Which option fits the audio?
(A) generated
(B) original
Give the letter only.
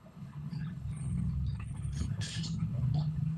A